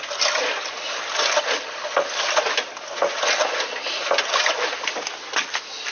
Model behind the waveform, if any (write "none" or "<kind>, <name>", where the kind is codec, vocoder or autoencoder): none